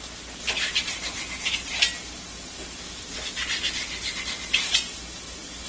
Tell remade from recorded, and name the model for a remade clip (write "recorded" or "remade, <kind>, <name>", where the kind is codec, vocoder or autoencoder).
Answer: recorded